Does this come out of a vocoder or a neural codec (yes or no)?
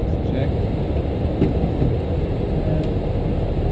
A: no